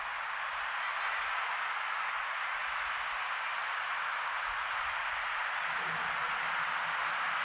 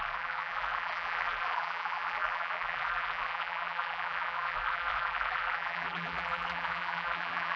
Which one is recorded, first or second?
first